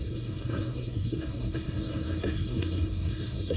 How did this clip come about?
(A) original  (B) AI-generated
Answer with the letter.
B